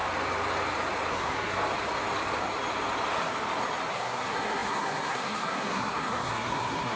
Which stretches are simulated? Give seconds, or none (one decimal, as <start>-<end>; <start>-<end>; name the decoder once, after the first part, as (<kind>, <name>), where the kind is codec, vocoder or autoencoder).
1.1-1.6 (codec, SNAC); 3.9-7.0